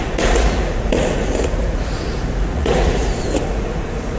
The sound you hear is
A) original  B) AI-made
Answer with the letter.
B